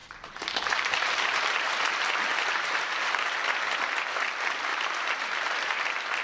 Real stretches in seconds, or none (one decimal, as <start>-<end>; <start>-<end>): 1.9-2.3; 3.4-4.7; 5.8-6.2